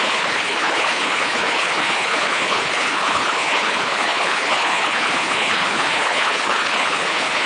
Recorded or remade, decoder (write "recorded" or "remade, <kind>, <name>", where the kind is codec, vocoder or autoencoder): remade, codec, HILCodec